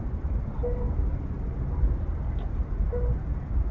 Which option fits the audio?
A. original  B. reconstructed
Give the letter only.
A